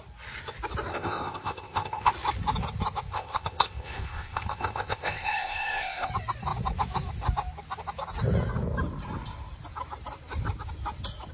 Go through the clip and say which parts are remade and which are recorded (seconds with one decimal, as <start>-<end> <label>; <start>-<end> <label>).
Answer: 0.0-0.9 recorded; 0.9-2.1 remade; 2.1-3.1 recorded; 3.1-6.1 remade; 6.1-11.3 recorded